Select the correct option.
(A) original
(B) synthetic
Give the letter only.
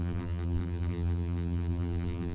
B